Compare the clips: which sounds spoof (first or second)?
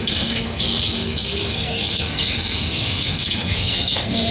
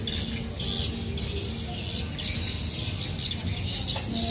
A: first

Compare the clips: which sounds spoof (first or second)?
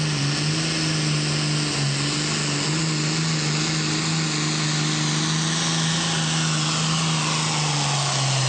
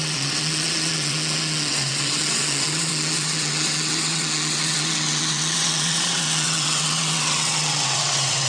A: second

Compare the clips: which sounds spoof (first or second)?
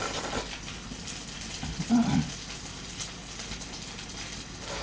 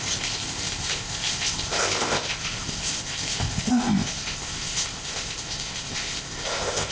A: second